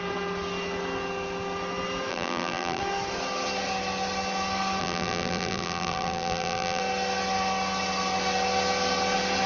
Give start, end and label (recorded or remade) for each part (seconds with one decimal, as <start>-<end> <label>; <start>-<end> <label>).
0.0-2.1 recorded; 2.1-2.8 remade; 2.8-4.8 recorded; 4.8-6.8 remade; 6.8-9.5 recorded